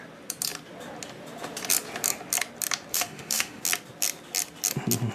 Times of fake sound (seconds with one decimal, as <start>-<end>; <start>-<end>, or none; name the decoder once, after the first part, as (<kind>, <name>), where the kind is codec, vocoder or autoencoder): 2.9-3.6 (autoencoder, DAC-VAE)